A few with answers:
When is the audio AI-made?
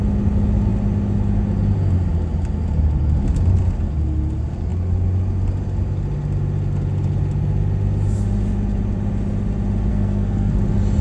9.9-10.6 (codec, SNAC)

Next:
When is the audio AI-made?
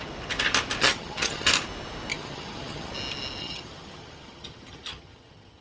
0.8-1.5 (vocoder, HiFi-GAN); 2.1-2.9; 3.4-5.6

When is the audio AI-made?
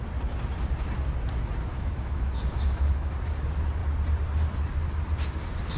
1.7-3.1 (autoencoder, DAC-VAE)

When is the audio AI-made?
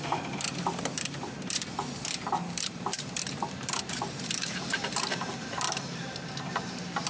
0.0-7.1 (vocoder, BigVGAN v2)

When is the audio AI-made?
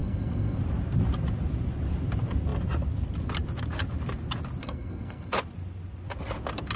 0.0-0.6 (codec, SNAC); 4.6-5.3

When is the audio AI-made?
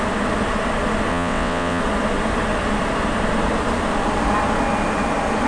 1.1-1.8 (vocoder, WaveNeXt)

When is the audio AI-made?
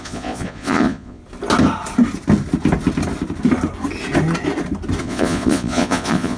0.0-1.2 (vocoder, Vocos); 5.0-6.4